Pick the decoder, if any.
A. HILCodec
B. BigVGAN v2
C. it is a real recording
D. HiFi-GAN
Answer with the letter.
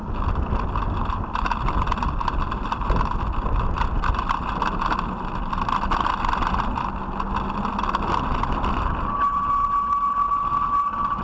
C